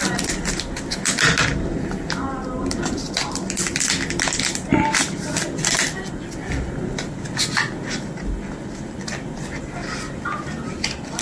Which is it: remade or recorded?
recorded